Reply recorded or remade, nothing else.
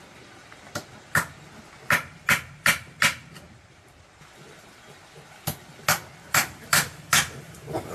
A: recorded